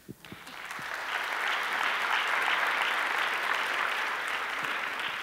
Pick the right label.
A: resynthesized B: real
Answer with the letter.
B